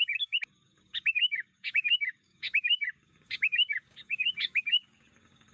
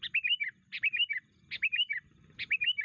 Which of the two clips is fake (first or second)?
first